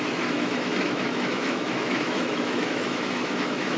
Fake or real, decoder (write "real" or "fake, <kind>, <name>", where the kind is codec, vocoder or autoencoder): fake, autoencoder, DAC-VAE